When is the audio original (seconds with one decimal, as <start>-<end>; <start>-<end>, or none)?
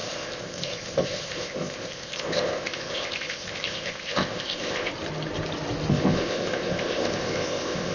4.9-5.9